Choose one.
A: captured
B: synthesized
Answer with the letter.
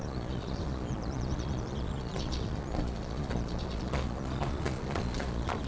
B